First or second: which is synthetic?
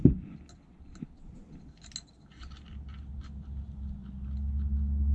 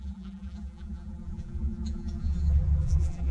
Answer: second